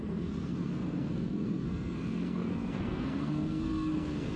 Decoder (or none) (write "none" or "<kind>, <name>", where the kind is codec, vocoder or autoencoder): codec, SNAC